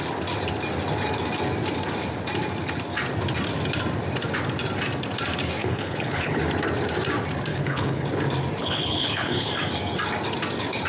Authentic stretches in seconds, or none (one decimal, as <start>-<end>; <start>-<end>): 0.0-5.6; 6.4-7.5; 8.1-8.6; 9.5-10.9